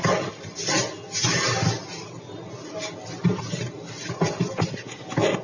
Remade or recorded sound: recorded